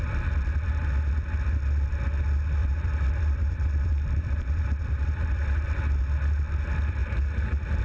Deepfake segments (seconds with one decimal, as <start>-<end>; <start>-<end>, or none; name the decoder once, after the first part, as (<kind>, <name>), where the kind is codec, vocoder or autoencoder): 2.6-6.0 (vocoder, BigVGAN v2)